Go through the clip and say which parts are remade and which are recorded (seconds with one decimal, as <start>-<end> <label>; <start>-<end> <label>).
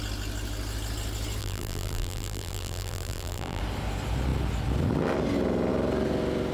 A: 0.0-1.4 recorded; 1.4-3.6 remade; 3.6-6.5 recorded